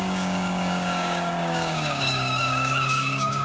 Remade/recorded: remade